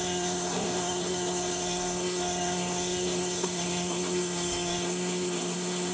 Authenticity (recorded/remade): remade